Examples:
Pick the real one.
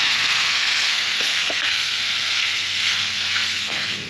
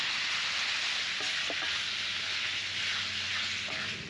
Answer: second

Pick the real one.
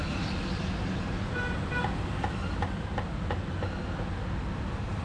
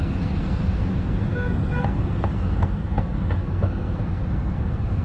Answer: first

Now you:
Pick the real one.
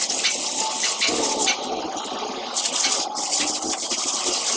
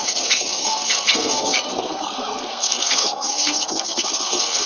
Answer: first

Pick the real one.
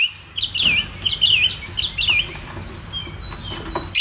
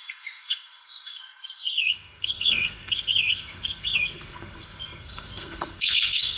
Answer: first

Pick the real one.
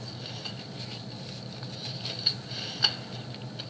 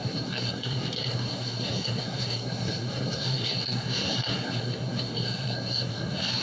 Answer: first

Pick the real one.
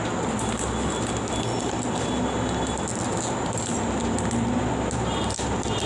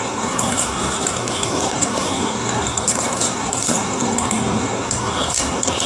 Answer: first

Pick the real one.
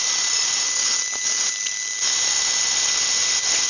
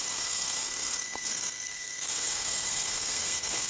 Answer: first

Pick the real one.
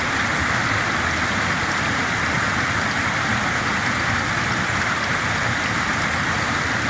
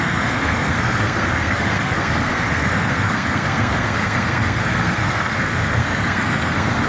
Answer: first